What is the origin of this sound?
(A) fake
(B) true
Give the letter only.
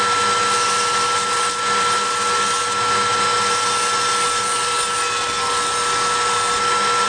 B